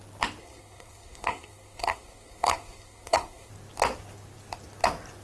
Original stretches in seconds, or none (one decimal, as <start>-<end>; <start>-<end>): 0.0-0.4; 3.5-5.2